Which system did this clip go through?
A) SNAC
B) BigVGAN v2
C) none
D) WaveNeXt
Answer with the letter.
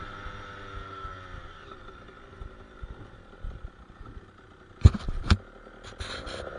C